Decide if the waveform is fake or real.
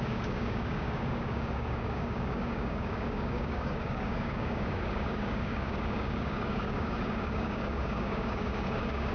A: fake